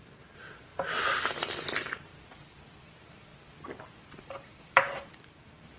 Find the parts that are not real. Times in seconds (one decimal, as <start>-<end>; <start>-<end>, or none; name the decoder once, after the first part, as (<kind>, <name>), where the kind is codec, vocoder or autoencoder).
0.0-0.7 (vocoder, BigVGAN v2); 1.3-2.1; 2.8-3.3; 4.2-5.8